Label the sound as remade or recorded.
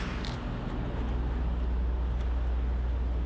recorded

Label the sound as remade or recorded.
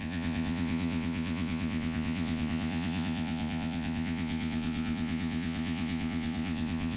remade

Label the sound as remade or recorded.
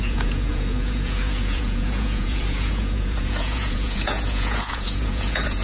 remade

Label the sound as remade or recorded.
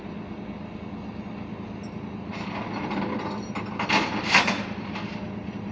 recorded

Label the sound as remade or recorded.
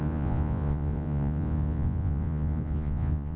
remade